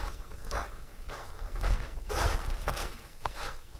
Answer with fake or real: fake